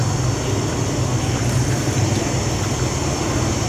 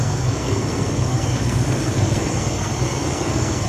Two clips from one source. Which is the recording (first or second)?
first